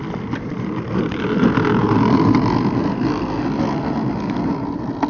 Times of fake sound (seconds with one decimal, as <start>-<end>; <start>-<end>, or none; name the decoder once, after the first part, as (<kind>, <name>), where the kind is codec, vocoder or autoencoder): none